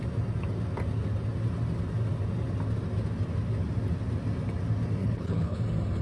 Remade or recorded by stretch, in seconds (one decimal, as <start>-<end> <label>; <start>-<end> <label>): 0.0-5.0 recorded; 5.0-5.6 remade; 5.6-6.0 recorded

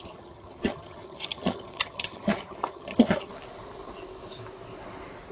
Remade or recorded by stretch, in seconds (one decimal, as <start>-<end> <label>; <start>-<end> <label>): 0.0-3.3 remade; 3.3-5.3 recorded

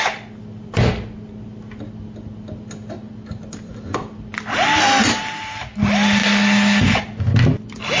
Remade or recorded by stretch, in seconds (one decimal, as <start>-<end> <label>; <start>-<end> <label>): 0.0-8.0 recorded

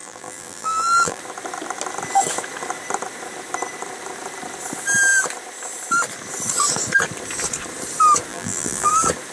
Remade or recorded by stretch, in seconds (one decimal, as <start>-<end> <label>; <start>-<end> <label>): 0.0-1.2 remade; 1.2-8.3 recorded; 8.3-8.9 remade; 8.9-9.3 recorded

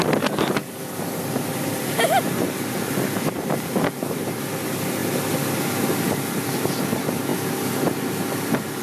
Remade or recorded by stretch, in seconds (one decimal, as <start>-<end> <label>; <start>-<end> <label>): 0.0-5.0 remade; 5.0-6.0 recorded; 6.0-8.8 remade

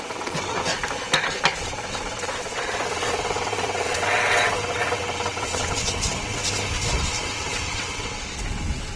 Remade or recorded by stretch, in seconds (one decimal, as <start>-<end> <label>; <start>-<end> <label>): 0.0-0.7 remade; 0.7-1.6 recorded; 1.6-6.4 remade; 6.4-7.0 recorded; 7.0-9.0 remade

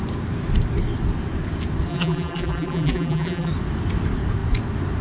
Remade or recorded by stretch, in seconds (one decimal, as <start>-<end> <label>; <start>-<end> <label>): 0.0-1.9 recorded; 1.9-3.5 remade; 3.5-5.0 recorded